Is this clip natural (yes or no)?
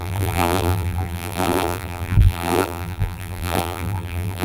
no